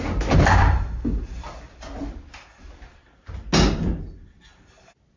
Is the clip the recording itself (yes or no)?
yes